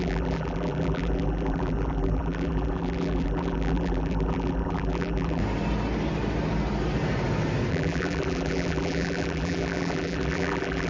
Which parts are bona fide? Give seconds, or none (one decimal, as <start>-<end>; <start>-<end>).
5.4-7.7